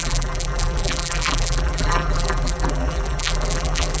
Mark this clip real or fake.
fake